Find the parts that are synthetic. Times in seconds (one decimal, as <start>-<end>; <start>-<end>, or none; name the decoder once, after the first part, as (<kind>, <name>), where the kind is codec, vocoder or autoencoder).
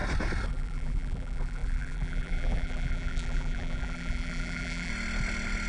0.5-4.9 (vocoder, BigVGAN v2)